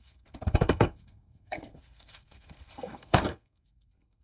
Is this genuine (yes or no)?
no